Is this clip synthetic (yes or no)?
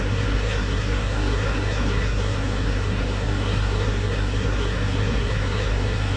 yes